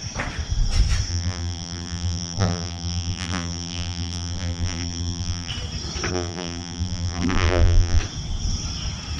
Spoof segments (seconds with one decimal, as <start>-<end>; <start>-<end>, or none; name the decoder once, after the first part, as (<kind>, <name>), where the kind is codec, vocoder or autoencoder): 1.1-5.5 (vocoder, BigVGAN v2); 6.1-8.0